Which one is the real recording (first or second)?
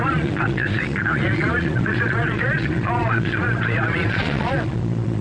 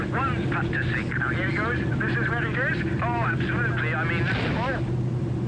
second